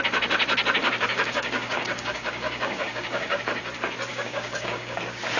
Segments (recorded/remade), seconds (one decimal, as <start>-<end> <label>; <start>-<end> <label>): 0.0-0.8 recorded; 0.8-3.4 remade; 3.4-4.1 recorded; 4.1-5.0 remade; 5.0-5.4 recorded